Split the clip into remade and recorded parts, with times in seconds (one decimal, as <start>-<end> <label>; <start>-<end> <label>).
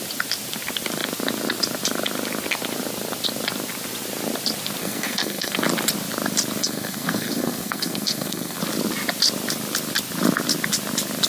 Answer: 0.0-4.8 recorded; 4.8-5.6 remade; 5.6-6.6 recorded; 6.6-8.6 remade; 8.6-11.3 recorded